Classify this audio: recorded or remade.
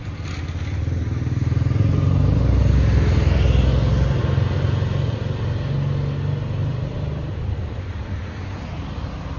recorded